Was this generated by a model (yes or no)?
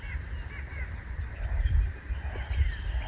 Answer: no